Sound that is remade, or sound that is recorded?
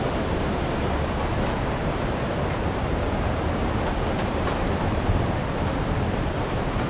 remade